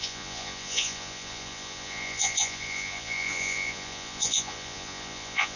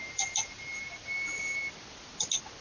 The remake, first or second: first